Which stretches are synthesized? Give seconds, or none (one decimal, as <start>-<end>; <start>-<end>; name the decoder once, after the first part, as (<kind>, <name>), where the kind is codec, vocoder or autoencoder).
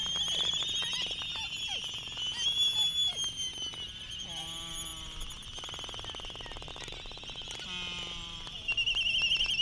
none